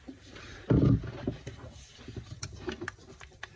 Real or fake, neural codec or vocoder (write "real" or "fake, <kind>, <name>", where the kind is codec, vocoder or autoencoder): real